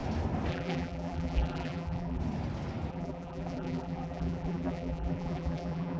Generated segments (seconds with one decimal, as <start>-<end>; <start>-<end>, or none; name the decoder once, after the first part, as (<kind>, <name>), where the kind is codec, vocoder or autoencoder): 0.5-2.2 (vocoder, BigVGAN v2); 2.9-6.0

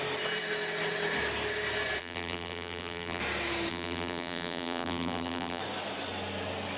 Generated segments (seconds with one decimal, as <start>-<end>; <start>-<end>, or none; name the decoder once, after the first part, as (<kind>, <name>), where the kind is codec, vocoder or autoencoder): 2.0-3.2 (vocoder, BigVGAN v2); 3.7-5.6

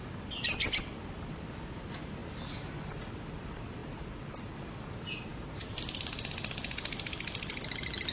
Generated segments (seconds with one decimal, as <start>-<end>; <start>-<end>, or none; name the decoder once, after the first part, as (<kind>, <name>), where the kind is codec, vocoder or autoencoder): none

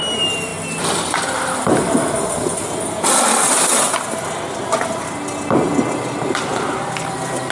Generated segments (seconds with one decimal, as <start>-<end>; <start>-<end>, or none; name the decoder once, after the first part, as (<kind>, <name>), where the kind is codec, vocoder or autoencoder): none

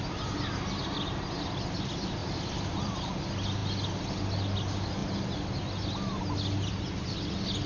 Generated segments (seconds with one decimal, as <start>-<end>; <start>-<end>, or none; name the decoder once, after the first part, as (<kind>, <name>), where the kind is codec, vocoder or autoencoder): 2.2-3.1 (vocoder, BigVGAN v2)

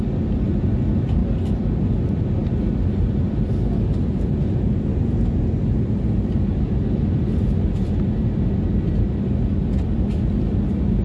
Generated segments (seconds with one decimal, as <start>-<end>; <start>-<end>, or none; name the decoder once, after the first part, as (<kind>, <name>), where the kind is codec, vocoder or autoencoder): 1.2-1.8 (vocoder, BigVGAN v2); 2.4-3.5

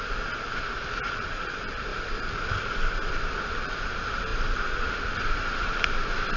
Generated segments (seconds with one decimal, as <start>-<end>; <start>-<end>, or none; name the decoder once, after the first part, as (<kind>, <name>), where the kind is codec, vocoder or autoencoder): 0.0-1.9 (vocoder, BigVGAN v2); 3.1-6.4

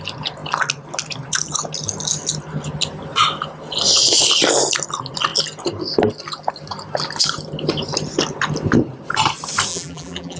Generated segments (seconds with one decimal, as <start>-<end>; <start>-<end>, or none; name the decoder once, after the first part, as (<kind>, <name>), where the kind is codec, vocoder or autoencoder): 9.7-10.4 (vocoder, BigVGAN v2)